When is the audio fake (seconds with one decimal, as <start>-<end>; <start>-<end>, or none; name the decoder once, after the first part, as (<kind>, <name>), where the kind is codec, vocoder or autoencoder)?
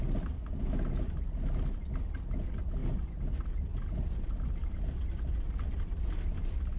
none